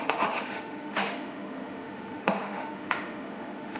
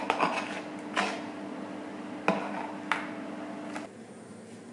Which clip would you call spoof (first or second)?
first